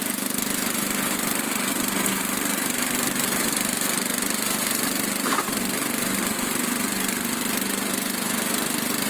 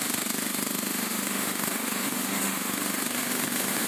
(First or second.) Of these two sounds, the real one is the first